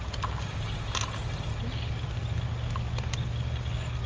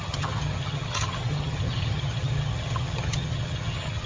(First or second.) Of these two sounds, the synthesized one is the second